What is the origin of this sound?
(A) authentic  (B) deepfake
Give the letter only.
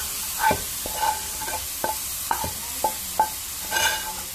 A